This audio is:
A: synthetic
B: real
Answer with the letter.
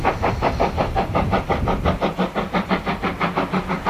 B